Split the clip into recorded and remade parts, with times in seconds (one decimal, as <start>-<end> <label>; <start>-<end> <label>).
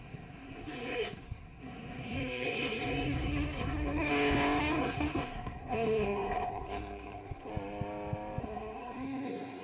0.0-4.1 remade; 4.1-4.6 recorded; 4.6-7.5 remade; 7.5-8.4 recorded; 8.4-9.6 remade